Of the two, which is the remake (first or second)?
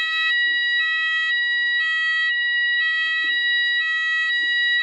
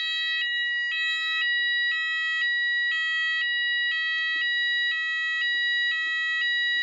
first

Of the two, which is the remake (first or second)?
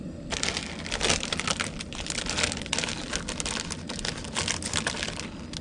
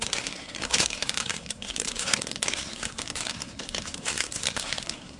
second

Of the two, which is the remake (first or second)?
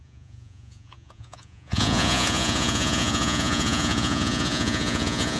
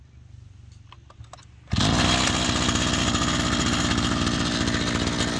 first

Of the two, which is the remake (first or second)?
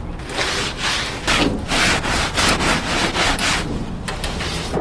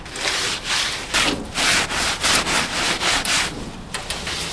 second